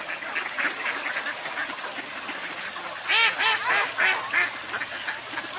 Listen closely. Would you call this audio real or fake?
real